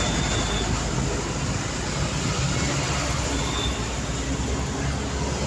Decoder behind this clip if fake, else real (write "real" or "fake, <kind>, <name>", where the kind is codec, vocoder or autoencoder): real